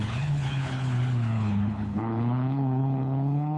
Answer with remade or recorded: remade